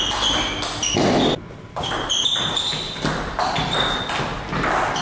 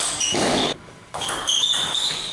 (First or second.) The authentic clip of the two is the first